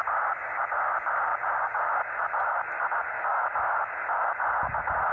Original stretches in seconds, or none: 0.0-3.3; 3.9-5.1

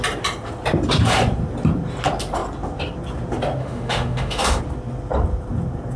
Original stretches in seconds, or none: 0.0-3.6; 4.6-6.0

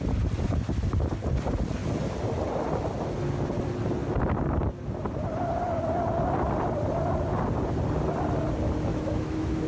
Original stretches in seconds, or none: 0.0-8.9

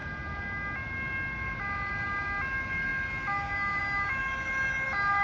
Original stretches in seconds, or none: 0.0-5.2

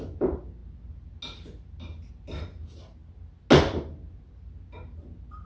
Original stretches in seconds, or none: 0.0-5.4

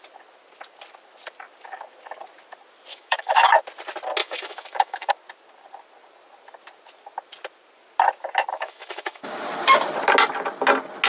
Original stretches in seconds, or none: 0.0-2.9; 3.5-4.2; 5.1-8.5; 9.2-11.1